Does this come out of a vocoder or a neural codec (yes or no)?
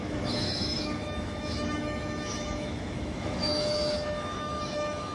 yes